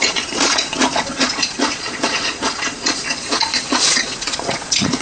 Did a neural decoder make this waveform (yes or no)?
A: yes